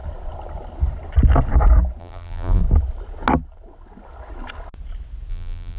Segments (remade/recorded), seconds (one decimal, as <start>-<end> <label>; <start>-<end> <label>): 0.0-2.0 recorded; 2.0-2.6 remade; 2.6-5.3 recorded; 5.3-5.8 remade

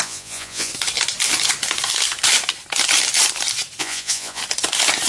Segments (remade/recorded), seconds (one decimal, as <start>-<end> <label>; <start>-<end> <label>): 0.0-0.7 remade; 0.7-3.8 recorded; 3.8-4.4 remade; 4.4-5.1 recorded

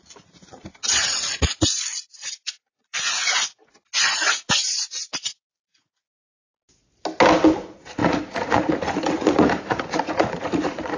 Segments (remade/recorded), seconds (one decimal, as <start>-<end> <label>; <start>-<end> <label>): 0.0-0.6 remade; 0.6-1.4 recorded; 1.4-3.6 remade; 3.6-4.5 recorded; 4.5-6.2 remade; 6.2-7.6 recorded; 7.6-11.0 remade

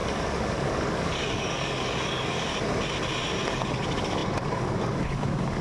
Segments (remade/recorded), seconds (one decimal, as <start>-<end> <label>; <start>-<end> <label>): 0.0-2.5 remade; 2.5-3.5 recorded; 3.5-5.6 remade